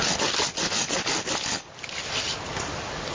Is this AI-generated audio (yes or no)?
no